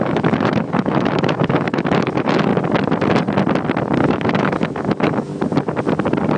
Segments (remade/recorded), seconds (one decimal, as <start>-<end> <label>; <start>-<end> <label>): 0.0-2.5 remade; 2.5-4.0 recorded; 4.0-5.3 remade; 5.3-6.4 recorded